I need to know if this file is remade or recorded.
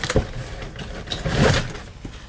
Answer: recorded